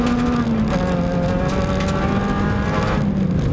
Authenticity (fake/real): real